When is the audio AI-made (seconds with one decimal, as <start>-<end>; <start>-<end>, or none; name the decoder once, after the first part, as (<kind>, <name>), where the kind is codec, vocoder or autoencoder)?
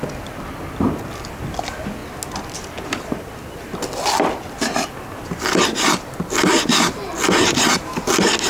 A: none